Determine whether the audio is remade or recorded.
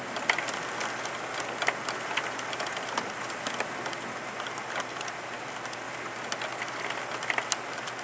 recorded